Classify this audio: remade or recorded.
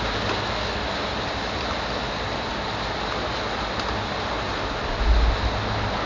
recorded